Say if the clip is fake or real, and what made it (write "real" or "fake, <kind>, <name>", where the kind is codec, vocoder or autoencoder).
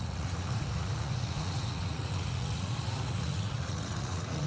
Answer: fake, vocoder, Vocos